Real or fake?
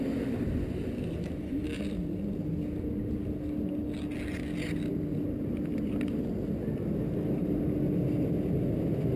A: real